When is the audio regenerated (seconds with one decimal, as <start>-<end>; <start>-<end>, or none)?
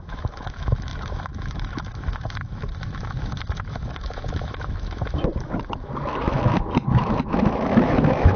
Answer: 0.0-8.4